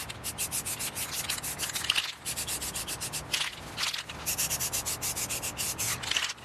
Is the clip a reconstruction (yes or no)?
no